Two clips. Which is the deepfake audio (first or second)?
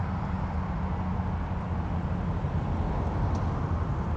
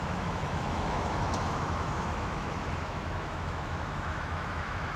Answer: second